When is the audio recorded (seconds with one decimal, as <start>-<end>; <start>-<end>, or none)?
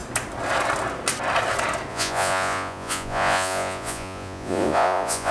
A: 0.0-1.9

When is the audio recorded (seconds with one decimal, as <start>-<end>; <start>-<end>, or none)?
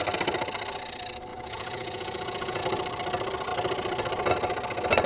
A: 0.0-1.3; 2.6-5.1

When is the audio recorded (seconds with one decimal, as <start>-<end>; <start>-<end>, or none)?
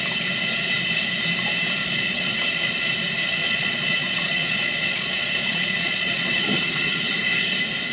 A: 0.0-1.8; 2.3-3.4; 7.1-7.9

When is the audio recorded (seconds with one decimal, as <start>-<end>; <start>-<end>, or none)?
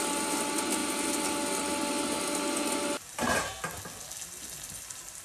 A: 0.0-5.2